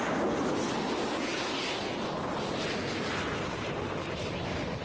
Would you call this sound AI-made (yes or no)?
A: no